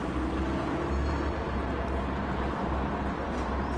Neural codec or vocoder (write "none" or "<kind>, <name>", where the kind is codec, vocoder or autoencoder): none